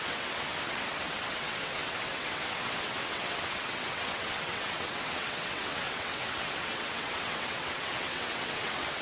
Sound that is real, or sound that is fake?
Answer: fake